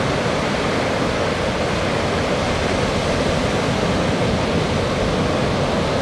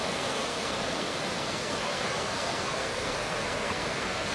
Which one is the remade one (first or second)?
second